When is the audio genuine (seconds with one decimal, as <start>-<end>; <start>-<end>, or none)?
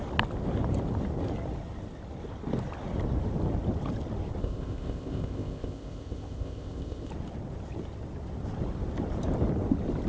0.0-4.4; 7.1-10.1